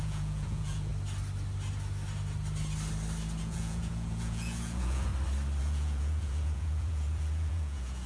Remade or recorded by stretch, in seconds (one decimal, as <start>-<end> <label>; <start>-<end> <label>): 0.0-0.9 remade; 0.9-3.4 recorded; 3.4-5.1 remade; 5.1-5.6 recorded; 5.6-8.1 remade